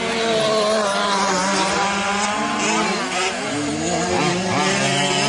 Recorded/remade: recorded